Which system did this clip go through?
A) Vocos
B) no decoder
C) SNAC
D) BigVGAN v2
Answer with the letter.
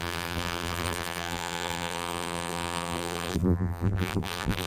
D